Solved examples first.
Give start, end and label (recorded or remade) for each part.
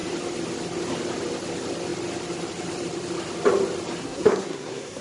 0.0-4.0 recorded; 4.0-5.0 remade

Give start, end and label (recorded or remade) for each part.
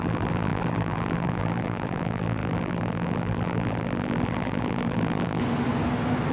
0.0-5.4 remade; 5.4-6.3 recorded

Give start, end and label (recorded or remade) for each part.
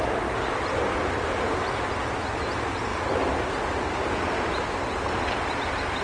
0.0-6.0 recorded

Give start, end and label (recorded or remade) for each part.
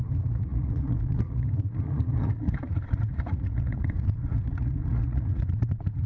0.0-6.1 remade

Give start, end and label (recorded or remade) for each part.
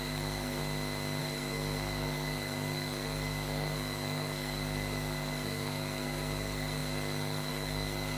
0.0-0.6 remade; 0.6-1.2 recorded; 1.2-8.2 remade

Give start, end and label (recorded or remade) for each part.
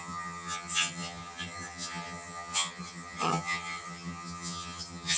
0.0-5.2 remade